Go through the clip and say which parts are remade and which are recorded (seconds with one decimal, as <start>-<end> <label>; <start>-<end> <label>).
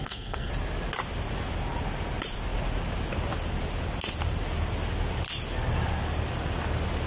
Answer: 0.0-0.5 remade; 0.5-7.1 recorded